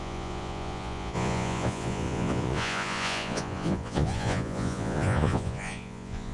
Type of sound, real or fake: fake